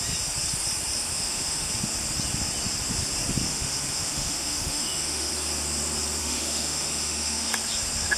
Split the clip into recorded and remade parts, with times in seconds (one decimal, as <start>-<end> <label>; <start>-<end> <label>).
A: 0.0-1.1 recorded; 1.1-1.7 remade; 1.7-3.5 recorded; 3.5-5.3 remade; 5.3-6.2 recorded; 6.2-7.5 remade; 7.5-8.2 recorded